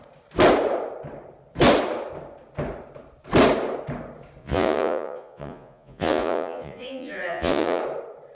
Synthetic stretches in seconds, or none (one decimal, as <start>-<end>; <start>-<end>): 4.4-7.8